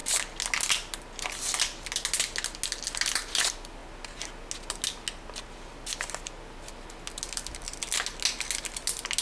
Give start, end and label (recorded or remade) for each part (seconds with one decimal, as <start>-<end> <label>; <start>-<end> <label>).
0.0-9.2 recorded